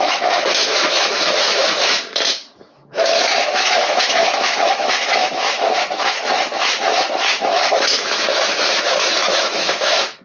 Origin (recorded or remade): remade